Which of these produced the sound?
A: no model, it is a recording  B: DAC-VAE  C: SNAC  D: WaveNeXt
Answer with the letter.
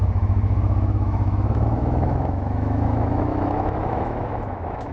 B